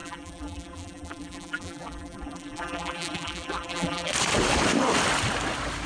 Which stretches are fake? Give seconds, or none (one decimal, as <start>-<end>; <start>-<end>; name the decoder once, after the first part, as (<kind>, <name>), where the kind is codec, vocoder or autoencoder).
0.0-4.1 (vocoder, BigVGAN v2)